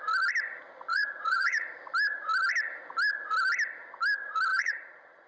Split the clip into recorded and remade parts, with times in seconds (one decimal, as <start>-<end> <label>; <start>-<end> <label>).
0.0-0.9 recorded; 0.9-1.7 remade; 1.7-4.5 recorded; 4.5-5.3 remade